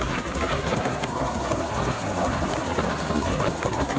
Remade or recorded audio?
remade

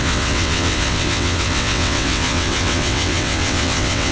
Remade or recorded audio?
remade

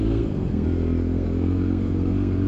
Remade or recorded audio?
remade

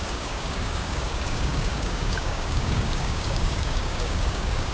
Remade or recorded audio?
remade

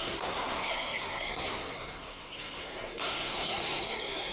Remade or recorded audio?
remade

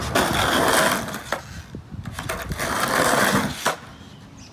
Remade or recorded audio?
recorded